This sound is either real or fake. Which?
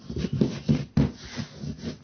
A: real